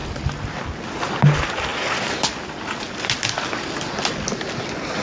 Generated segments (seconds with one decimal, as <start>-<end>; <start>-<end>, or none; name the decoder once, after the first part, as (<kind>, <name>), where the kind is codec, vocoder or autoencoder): none